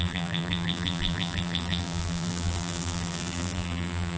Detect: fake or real fake